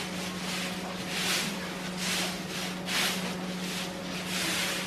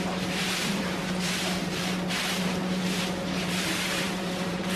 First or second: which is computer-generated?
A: second